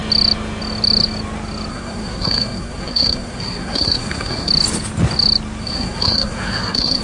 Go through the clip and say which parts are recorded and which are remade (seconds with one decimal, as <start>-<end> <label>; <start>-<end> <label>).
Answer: 0.0-1.7 recorded; 1.7-4.5 remade; 4.5-5.6 recorded; 5.6-7.0 remade